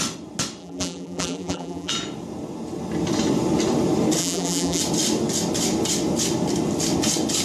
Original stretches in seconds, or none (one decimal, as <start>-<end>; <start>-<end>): 0.0-0.6; 1.9-4.2; 4.8-7.4